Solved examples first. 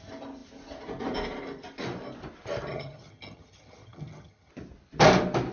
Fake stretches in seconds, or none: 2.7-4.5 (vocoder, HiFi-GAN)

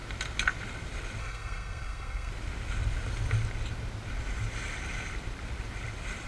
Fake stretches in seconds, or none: 1.2-2.3 (codec, SNAC)

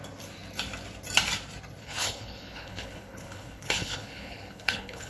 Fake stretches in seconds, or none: 1.8-5.1 (codec, HILCodec)

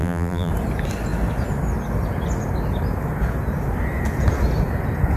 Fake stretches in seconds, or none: 0.0-0.5 (vocoder, BigVGAN v2)

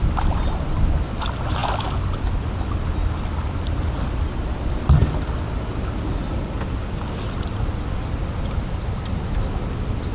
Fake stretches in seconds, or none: none